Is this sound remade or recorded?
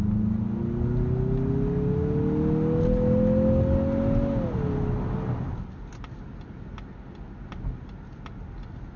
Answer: recorded